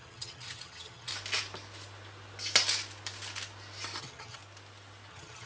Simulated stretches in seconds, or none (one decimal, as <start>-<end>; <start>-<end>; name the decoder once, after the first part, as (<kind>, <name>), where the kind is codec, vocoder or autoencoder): 0.0-1.1 (vocoder, HiFi-GAN); 4.0-4.4; 5.1-5.5